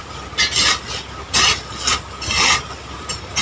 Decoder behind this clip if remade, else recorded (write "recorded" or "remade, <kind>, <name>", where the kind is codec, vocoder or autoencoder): recorded